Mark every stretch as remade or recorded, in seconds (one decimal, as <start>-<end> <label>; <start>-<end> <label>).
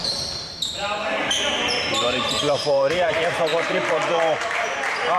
0.0-5.2 remade